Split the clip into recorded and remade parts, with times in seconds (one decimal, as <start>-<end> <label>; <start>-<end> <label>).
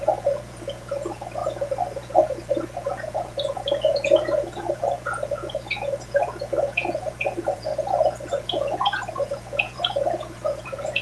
0.0-11.0 remade